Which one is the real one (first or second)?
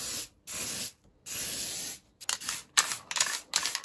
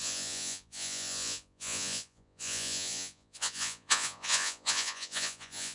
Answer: first